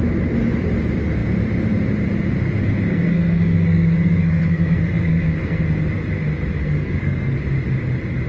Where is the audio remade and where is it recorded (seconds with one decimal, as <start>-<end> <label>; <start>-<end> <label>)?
0.0-2.9 recorded; 2.9-5.6 remade; 5.6-6.6 recorded; 6.6-7.4 remade; 7.4-8.3 recorded